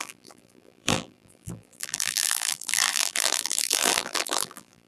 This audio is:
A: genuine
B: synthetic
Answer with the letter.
B